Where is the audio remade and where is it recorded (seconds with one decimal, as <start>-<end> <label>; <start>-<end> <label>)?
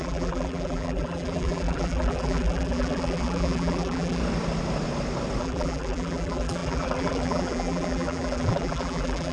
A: 0.0-4.2 remade; 4.2-5.4 recorded; 5.4-9.3 remade